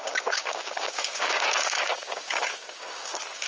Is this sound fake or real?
fake